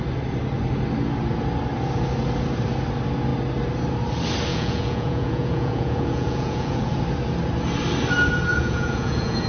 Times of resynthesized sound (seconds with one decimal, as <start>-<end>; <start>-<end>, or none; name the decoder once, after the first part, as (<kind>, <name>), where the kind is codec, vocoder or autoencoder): 4.5-7.0 (vocoder, Vocos); 8.5-9.5